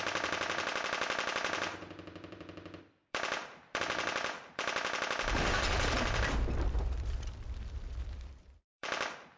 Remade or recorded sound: remade